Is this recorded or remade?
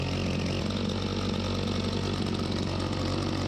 recorded